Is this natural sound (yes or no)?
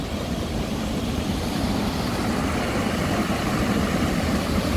yes